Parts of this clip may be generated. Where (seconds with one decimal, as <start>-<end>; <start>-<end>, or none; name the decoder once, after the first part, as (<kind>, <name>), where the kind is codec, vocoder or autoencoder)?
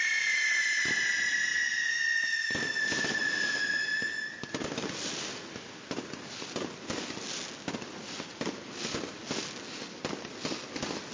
none